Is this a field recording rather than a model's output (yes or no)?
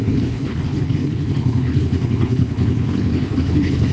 no